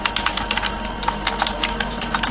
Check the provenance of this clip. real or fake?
real